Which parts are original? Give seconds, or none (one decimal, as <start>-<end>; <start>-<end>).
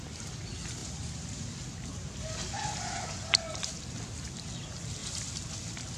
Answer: 0.0-6.0